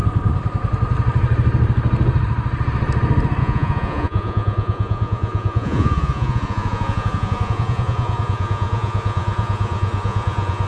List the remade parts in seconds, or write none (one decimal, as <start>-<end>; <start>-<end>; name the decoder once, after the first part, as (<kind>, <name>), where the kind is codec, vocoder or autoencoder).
3.4-10.7 (vocoder, Vocos)